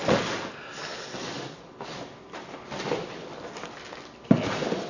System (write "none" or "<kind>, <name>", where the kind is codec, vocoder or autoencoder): none